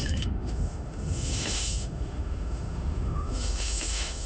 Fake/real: fake